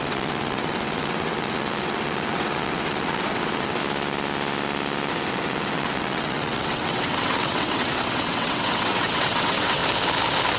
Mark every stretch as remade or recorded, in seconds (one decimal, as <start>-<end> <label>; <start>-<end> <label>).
0.0-3.8 remade; 3.8-5.1 recorded; 5.1-9.8 remade; 9.8-10.6 recorded